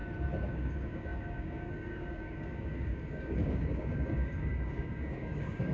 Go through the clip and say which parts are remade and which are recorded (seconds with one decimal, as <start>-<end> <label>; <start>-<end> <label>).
0.0-0.5 recorded; 0.5-5.7 remade